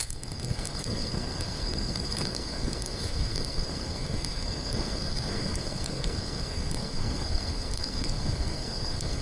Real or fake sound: fake